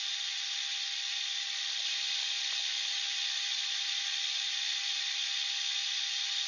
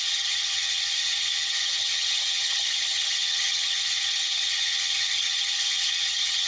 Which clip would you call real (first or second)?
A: first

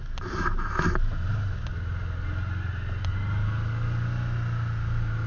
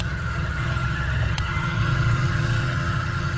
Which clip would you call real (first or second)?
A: first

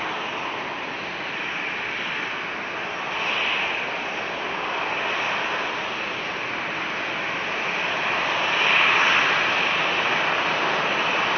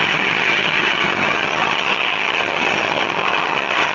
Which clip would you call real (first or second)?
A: first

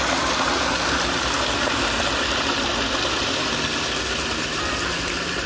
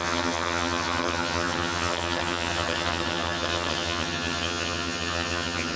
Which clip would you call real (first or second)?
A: first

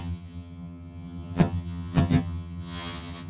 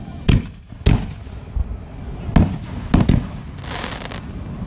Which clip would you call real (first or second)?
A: second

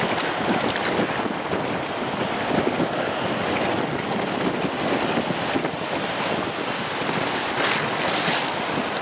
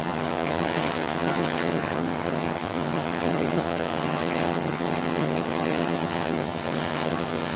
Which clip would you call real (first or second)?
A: first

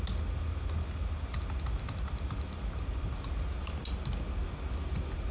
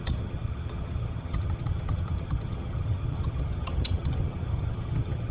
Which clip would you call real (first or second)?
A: first